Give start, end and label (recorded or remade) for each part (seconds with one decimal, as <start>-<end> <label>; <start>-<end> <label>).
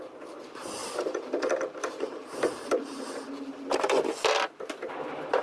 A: 0.0-0.8 recorded; 0.8-4.0 remade; 4.0-5.4 recorded